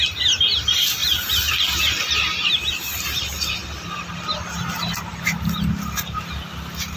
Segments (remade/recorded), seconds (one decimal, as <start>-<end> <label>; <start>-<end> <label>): 0.0-7.0 recorded